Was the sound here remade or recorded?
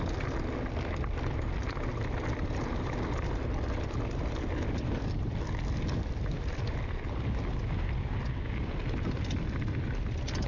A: recorded